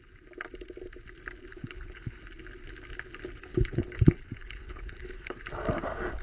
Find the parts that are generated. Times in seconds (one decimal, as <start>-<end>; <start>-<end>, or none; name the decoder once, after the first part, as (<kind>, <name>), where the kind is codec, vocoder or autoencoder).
1.5-2.2 (codec, HILCodec); 3.5-5.4